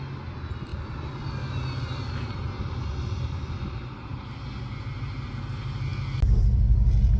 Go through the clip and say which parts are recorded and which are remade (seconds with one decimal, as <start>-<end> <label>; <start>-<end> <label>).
0.0-7.2 recorded